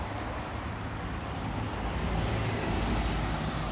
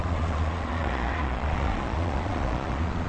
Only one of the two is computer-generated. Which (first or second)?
second